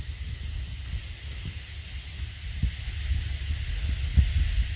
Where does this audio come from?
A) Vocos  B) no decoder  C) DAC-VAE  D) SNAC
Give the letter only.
B